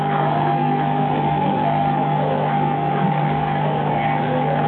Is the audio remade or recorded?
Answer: remade